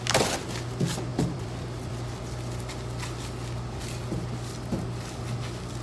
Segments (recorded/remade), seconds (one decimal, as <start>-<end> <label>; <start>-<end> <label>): 0.0-1.1 recorded; 1.1-1.9 remade; 1.9-5.8 recorded